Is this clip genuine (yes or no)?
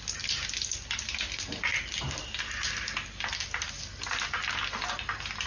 yes